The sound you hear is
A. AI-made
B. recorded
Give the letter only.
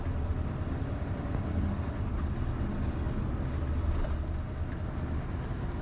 B